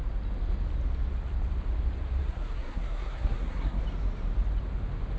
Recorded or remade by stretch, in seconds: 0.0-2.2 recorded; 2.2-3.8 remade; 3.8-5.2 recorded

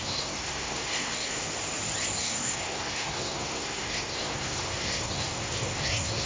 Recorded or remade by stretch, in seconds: 0.0-1.4 remade; 1.4-2.2 recorded; 2.2-6.2 remade

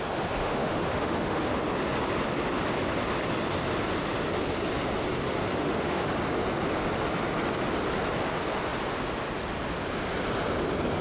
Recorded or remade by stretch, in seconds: 0.0-0.4 recorded; 0.4-1.5 remade; 1.5-5.6 recorded; 5.6-6.1 remade; 6.1-11.0 recorded